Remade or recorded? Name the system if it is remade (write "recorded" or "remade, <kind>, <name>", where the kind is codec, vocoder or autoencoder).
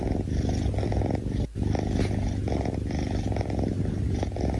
recorded